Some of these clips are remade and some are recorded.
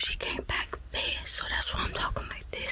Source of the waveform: recorded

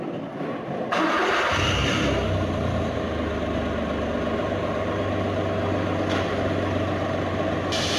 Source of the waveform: recorded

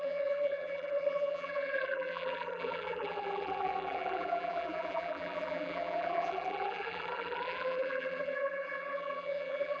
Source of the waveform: remade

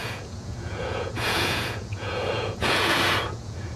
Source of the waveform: remade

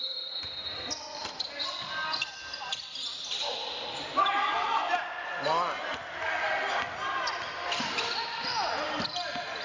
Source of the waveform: recorded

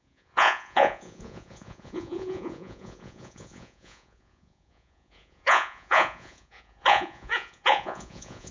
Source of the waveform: remade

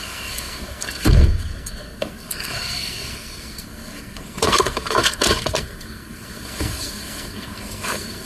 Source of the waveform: remade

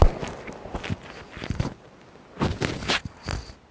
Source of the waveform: recorded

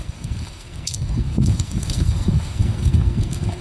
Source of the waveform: remade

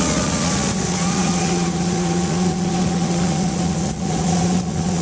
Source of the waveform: remade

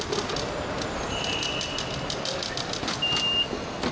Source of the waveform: remade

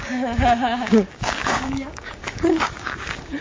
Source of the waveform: remade